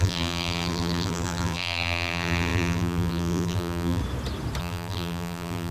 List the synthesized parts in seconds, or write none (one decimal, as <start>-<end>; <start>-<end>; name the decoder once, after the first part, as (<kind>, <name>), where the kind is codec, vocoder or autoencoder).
0.0-4.0 (vocoder, BigVGAN v2); 4.6-5.7